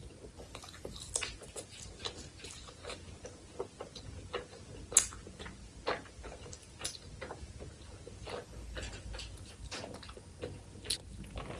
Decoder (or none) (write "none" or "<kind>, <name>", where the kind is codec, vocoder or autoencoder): none